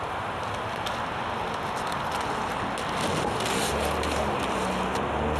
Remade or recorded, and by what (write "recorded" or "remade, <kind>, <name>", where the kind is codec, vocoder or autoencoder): recorded